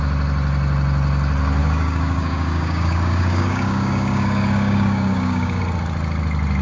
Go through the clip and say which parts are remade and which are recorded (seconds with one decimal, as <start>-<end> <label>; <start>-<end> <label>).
0.0-1.6 recorded; 1.6-5.6 remade; 5.6-6.6 recorded